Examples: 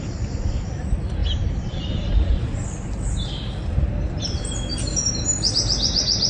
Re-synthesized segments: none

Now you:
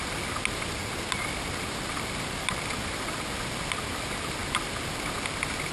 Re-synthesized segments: none

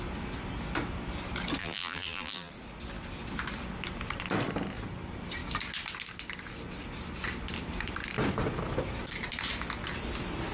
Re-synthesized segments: 1.6-2.5 (vocoder, BigVGAN v2)